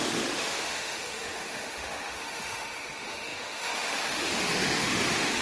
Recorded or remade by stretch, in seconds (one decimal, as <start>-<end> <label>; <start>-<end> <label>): 0.0-5.4 remade